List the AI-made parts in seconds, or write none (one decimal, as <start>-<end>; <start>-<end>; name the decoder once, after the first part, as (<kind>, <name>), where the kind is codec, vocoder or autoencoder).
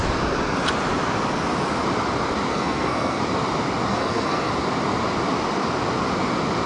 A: 2.5-3.2 (codec, SNAC); 3.9-4.5